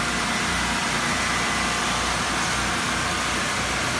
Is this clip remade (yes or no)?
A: no